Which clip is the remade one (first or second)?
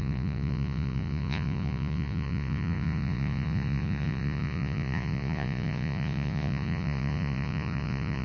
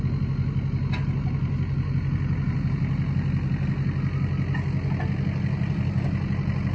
first